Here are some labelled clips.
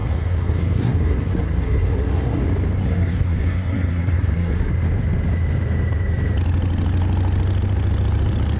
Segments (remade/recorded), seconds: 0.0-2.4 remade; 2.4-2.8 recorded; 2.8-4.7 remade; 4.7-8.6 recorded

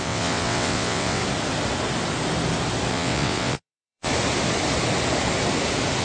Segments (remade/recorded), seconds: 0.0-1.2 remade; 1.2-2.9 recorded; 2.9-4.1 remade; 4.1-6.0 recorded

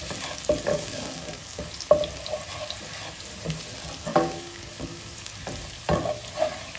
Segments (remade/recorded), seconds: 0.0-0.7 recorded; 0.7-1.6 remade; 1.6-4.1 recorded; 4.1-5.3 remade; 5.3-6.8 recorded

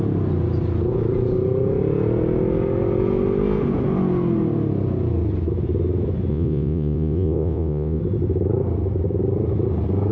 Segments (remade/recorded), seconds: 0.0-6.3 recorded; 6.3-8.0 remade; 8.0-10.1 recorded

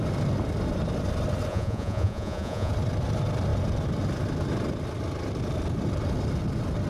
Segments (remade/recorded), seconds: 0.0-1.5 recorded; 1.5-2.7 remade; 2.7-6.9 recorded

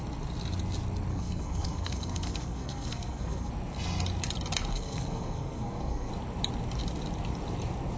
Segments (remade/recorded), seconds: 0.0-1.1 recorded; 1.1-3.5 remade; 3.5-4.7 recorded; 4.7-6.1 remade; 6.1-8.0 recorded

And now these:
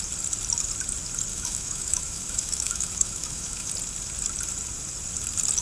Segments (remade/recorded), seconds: 0.0-1.3 recorded; 1.3-3.7 remade; 3.7-5.6 recorded